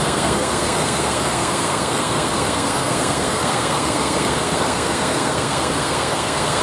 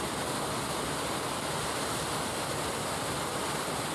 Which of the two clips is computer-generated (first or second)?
first